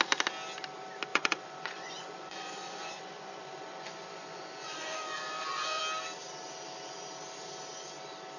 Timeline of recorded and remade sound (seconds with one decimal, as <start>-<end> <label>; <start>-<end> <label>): 0.0-1.1 recorded; 1.1-5.8 remade; 5.8-8.4 recorded